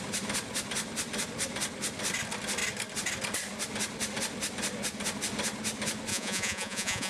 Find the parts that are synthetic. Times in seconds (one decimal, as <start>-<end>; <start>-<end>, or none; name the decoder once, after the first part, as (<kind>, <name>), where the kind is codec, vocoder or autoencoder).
6.1-7.1 (vocoder, Vocos)